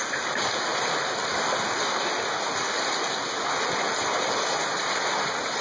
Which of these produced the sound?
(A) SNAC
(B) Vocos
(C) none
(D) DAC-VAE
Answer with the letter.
C